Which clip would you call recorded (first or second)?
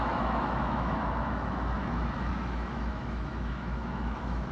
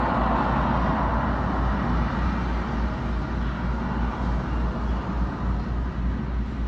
second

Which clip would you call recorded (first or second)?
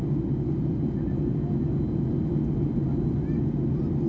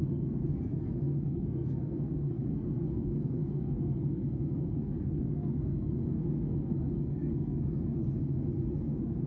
first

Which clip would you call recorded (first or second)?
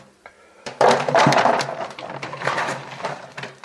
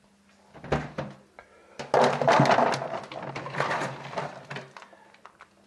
second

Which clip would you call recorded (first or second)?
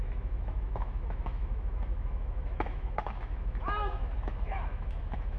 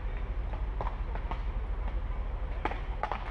second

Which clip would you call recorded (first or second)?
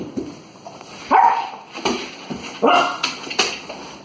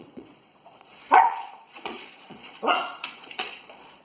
first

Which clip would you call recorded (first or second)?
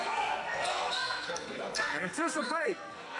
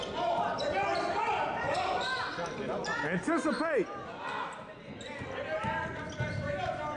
second